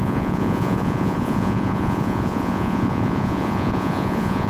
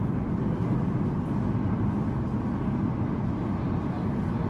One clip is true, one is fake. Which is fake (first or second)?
first